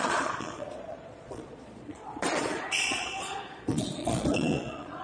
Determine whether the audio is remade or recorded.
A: remade